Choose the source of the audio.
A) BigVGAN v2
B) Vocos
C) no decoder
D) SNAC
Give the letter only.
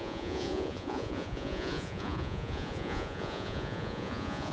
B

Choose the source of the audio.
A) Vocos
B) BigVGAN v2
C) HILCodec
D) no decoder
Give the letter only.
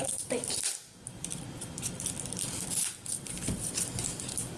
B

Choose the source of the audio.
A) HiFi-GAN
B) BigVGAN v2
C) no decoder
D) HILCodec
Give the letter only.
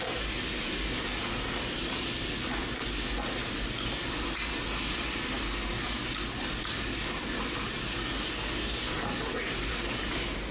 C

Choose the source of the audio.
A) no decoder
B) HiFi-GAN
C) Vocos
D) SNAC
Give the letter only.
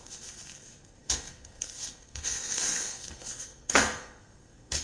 D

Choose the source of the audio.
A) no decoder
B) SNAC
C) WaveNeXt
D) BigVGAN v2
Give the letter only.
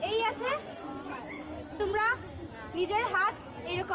A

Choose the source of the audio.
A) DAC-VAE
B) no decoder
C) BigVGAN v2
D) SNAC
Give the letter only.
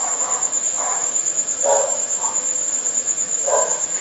A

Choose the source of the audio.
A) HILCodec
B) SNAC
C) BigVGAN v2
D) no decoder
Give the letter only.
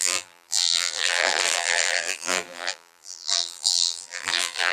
C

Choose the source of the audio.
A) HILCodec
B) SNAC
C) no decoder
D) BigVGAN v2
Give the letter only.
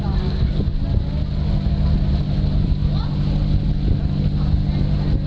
C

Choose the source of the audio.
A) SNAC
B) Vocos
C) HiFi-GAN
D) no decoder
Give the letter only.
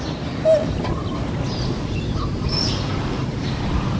D